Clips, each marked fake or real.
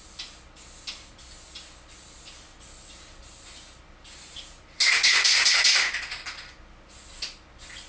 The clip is real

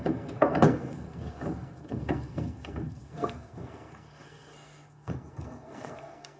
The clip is fake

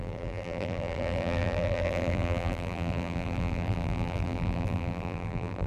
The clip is fake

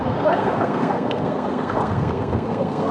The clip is fake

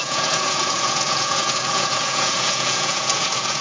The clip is fake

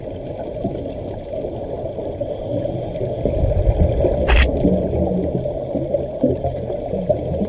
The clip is real